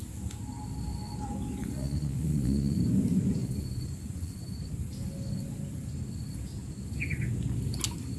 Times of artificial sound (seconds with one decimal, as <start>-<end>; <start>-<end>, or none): 1.6-2.8; 3.4-4.6